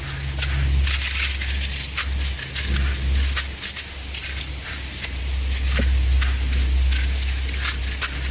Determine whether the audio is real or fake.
real